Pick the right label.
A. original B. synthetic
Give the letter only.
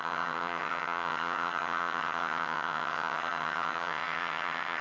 B